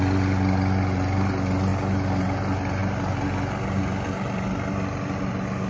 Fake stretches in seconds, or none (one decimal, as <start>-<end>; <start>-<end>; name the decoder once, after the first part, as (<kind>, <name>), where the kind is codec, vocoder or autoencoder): none